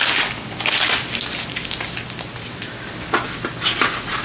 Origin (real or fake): real